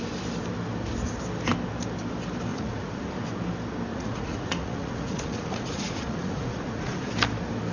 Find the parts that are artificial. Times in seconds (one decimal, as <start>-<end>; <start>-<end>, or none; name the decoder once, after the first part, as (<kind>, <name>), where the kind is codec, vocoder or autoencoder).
2.5-3.1 (vocoder, Vocos); 3.9-7.1